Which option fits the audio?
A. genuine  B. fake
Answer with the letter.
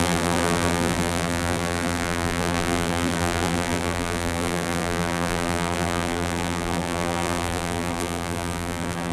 B